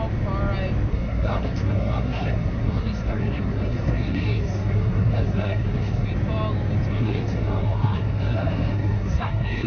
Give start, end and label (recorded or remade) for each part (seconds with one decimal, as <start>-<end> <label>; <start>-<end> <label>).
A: 0.0-0.9 recorded; 0.9-6.1 remade; 6.1-6.9 recorded; 6.9-9.7 remade